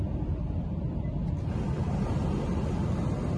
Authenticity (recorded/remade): recorded